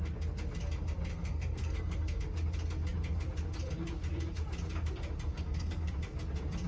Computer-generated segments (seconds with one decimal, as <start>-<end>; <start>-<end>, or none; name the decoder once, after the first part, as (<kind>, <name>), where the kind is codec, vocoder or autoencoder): 1.1-2.2 (codec, SNAC); 5.3-5.9